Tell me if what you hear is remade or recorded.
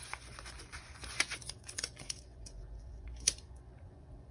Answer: remade